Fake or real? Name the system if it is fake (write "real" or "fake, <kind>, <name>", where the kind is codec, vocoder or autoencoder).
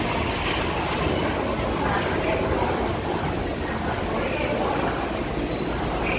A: real